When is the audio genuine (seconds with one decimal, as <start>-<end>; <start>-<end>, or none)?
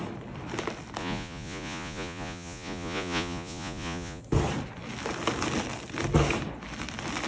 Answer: 0.0-1.0; 4.2-7.3